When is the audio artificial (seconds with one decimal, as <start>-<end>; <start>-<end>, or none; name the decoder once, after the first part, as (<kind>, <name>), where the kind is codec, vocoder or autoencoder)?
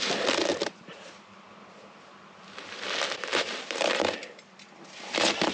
0.5-1.1 (vocoder, BigVGAN v2); 3.3-4.2